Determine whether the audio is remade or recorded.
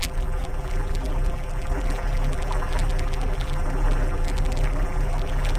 remade